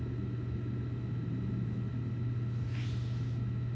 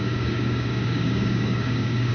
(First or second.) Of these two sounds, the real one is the first